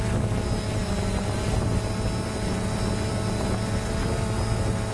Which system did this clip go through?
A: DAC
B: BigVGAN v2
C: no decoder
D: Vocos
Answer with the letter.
C